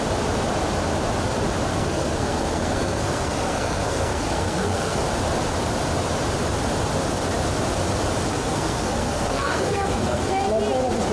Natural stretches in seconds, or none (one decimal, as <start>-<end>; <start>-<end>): 0.0-1.7; 5.0-8.3; 10.4-11.1